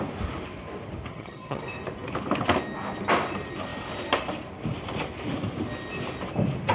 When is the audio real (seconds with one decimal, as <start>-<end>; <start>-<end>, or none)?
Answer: 0.0-1.1; 1.6-6.7